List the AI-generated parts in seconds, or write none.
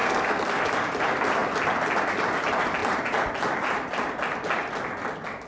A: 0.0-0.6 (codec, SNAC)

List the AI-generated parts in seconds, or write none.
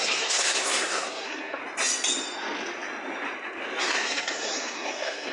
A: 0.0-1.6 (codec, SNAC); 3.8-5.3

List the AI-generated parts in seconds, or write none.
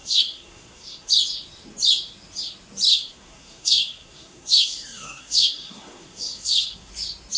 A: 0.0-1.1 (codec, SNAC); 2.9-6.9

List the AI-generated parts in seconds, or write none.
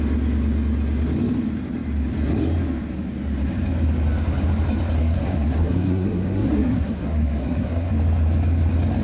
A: 5.0-7.9 (codec, SNAC)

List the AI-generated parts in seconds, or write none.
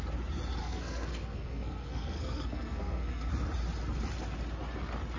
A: 0.6-3.3 (codec, SNAC)